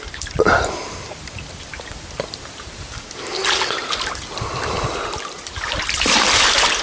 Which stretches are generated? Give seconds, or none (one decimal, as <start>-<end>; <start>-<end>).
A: none